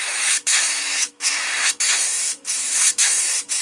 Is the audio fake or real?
fake